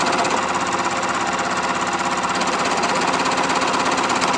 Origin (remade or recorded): recorded